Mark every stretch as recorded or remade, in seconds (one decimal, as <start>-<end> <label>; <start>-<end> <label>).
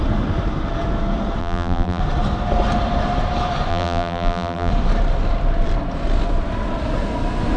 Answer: 0.0-1.4 recorded; 1.4-2.0 remade; 2.0-3.7 recorded; 3.7-4.7 remade; 4.7-7.6 recorded